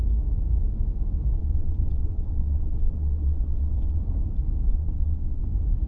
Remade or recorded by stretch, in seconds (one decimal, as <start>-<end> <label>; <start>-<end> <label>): 0.0-1.4 recorded; 1.4-4.0 remade; 4.0-4.7 recorded; 4.7-5.4 remade; 5.4-5.9 recorded

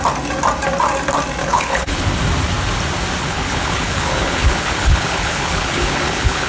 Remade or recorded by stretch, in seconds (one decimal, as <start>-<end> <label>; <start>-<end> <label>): 0.0-1.4 recorded; 1.4-2.0 remade; 2.0-3.2 recorded; 3.2-6.5 remade

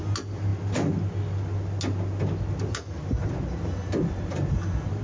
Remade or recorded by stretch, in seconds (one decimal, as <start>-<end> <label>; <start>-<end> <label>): 0.0-5.0 recorded

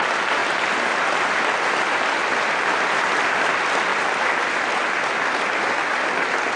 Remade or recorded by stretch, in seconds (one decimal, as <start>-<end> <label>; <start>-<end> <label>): 0.0-6.6 recorded

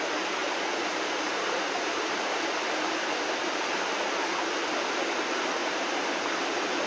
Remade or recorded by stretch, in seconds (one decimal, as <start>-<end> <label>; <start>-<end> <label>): 0.0-0.4 recorded; 0.4-3.7 remade; 3.7-5.6 recorded; 5.6-6.2 remade; 6.2-6.9 recorded